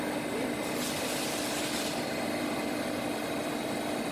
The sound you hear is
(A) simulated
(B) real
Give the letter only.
B